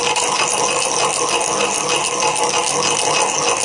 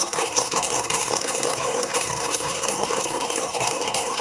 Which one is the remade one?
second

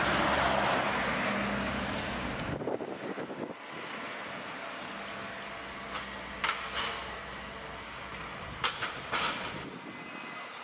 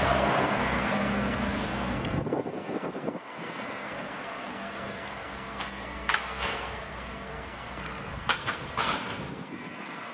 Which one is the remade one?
second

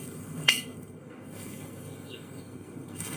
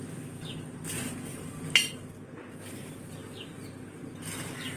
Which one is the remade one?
first